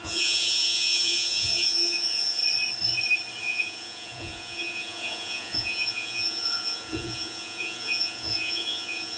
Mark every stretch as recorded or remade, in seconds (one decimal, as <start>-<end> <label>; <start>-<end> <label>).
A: 0.0-2.4 remade; 2.4-3.4 recorded; 3.4-9.2 remade